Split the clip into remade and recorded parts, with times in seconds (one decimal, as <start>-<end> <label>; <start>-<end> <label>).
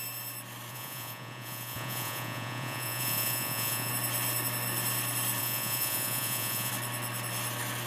0.0-0.7 recorded; 0.7-3.9 remade; 3.9-5.4 recorded; 5.4-6.7 remade; 6.7-7.9 recorded